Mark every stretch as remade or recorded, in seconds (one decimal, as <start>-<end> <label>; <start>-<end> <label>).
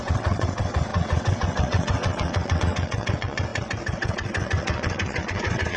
0.0-5.8 remade